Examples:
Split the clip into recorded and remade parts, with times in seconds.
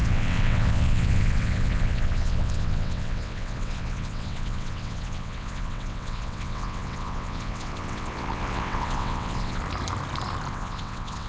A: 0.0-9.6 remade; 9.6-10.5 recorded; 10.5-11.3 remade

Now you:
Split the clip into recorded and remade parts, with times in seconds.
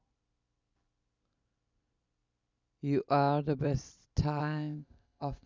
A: 0.0-4.4 recorded; 4.4-5.5 remade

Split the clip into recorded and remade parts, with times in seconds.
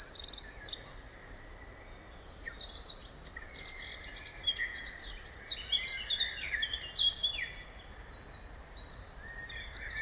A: 0.0-10.0 recorded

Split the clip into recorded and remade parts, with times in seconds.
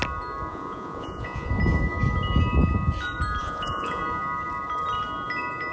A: 0.0-0.5 recorded; 0.5-1.5 remade; 1.5-3.4 recorded; 3.4-4.0 remade; 4.0-5.7 recorded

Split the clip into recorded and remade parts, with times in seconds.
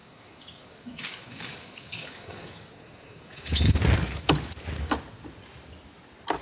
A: 0.0-3.8 remade; 3.8-6.4 recorded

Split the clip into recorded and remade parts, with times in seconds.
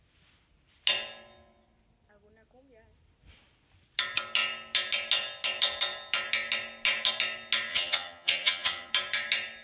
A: 0.0-7.7 recorded; 7.7-8.9 remade; 8.9-9.6 recorded